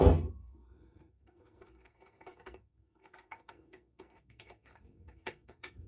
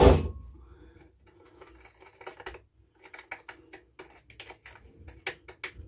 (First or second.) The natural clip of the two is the second